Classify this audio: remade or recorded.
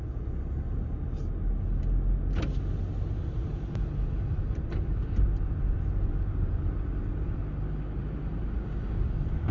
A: recorded